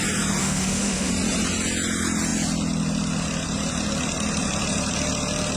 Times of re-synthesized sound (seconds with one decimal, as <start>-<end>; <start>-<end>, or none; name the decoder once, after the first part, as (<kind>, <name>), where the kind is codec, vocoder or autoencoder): 0.4-1.1 (autoencoder, DAC-VAE)